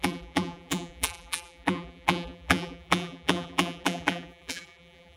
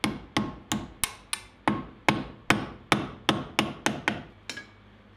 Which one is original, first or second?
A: second